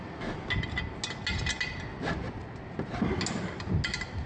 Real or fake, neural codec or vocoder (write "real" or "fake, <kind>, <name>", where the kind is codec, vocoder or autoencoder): real